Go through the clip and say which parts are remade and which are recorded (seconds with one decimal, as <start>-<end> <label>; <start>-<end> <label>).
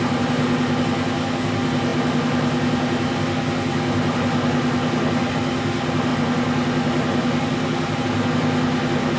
0.0-9.2 recorded